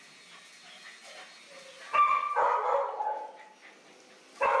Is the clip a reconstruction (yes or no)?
no